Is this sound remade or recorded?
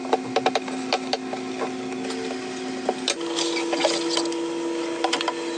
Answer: recorded